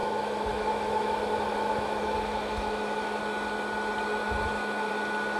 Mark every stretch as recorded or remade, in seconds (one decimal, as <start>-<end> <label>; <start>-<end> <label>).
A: 0.0-3.2 remade; 3.2-4.2 recorded; 4.2-4.9 remade; 4.9-5.4 recorded